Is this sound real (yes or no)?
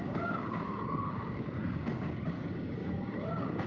no